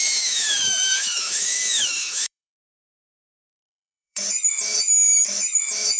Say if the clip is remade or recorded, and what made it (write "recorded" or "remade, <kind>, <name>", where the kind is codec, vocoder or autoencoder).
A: remade, autoencoder, DAC-VAE